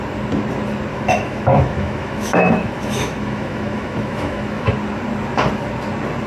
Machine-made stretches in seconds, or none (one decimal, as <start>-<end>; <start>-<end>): 0.9-4.7